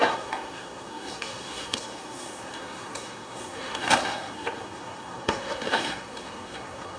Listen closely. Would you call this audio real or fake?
fake